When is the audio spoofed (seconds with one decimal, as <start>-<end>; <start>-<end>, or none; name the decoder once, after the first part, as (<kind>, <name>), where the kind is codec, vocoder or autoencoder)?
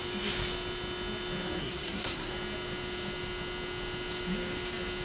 1.6-2.3 (codec, SNAC)